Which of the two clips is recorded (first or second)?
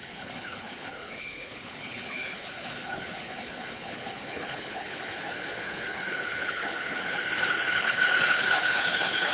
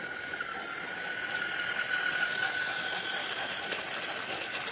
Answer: second